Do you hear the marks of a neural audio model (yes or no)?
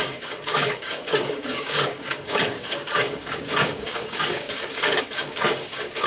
yes